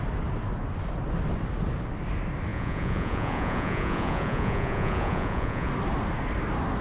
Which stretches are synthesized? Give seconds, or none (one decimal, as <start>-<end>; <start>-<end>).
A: 2.5-5.7